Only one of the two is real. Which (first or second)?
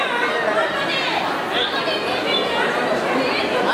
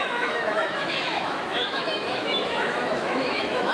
first